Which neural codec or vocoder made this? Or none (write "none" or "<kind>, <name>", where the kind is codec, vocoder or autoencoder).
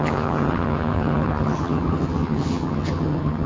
vocoder, HiFi-GAN